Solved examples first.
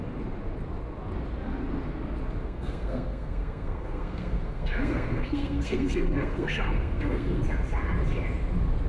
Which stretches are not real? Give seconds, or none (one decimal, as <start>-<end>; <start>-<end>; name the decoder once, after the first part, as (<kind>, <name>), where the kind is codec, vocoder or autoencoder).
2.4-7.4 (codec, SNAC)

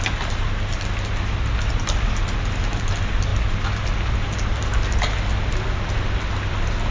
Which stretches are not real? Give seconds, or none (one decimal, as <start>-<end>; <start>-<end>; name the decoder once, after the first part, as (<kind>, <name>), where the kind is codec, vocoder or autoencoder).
none

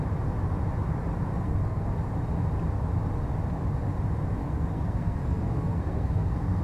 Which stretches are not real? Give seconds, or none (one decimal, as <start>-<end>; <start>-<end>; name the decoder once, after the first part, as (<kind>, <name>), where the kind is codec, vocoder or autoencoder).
1.3-1.9 (codec, SNAC); 4.4-6.6